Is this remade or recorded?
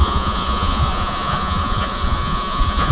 remade